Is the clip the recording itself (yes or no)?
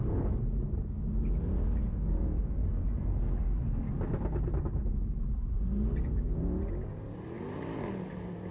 yes